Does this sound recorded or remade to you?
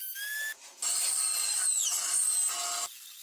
recorded